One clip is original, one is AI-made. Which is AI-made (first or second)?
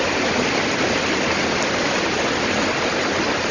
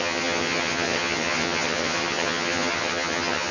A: second